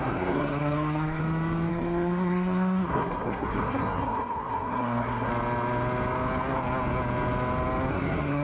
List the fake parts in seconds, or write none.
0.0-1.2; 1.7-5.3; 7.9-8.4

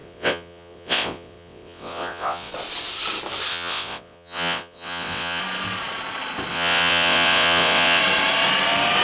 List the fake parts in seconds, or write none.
0.0-2.5; 3.5-5.4; 6.5-8.0

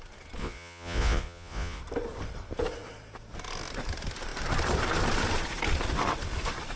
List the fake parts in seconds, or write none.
0.4-1.8

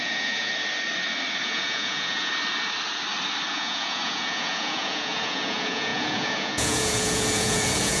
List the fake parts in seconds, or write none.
0.0-0.5; 1.4-2.3; 3.5-8.0

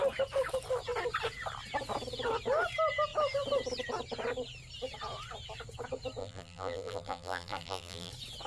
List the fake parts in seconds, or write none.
6.2-8.1

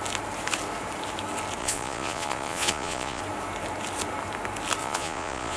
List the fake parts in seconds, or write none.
1.6-3.2; 4.8-5.6

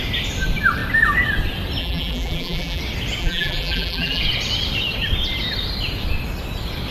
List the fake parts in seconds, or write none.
1.8-2.8; 3.2-4.2